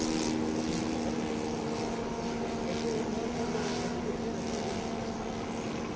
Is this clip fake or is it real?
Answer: real